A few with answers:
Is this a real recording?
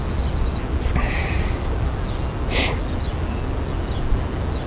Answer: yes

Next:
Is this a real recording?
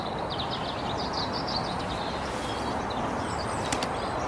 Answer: yes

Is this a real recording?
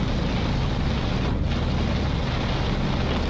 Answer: yes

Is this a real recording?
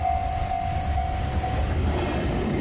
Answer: yes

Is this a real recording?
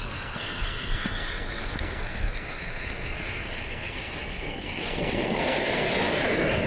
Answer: no